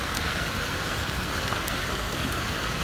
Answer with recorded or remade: remade